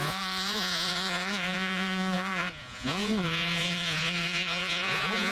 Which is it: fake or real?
fake